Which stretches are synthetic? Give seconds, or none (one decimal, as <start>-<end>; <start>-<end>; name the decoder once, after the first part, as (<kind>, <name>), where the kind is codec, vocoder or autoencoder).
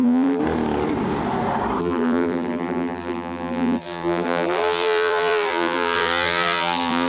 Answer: 0.0-0.4 (vocoder, BigVGAN v2); 1.8-7.1